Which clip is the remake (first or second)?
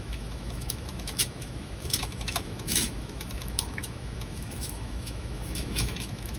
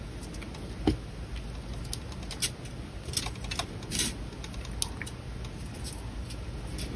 first